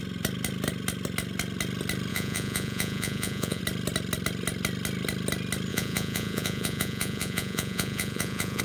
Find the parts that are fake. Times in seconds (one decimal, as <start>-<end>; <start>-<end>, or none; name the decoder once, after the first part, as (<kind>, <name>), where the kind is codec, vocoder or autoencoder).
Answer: 2.1-3.6 (vocoder, Vocos); 5.7-8.6